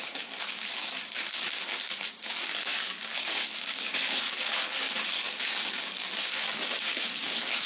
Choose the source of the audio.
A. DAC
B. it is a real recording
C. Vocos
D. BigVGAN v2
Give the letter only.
A